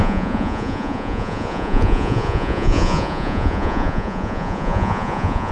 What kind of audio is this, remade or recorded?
remade